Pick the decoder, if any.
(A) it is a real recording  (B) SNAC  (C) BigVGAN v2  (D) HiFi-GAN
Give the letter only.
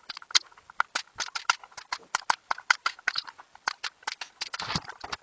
A